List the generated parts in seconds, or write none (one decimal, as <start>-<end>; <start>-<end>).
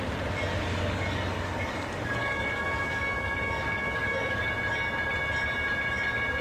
0.7-4.5